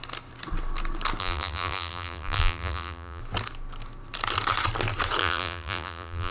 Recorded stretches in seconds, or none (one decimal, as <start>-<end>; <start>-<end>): 0.0-1.2; 3.2-5.2